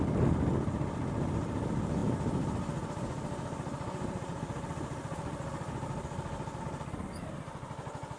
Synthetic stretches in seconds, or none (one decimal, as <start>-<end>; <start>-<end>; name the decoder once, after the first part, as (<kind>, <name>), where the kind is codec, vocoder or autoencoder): none